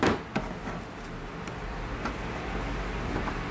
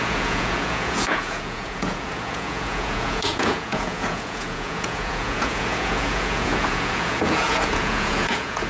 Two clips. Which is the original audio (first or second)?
first